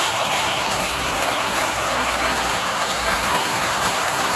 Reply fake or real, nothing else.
fake